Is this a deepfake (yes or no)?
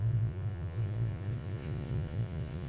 yes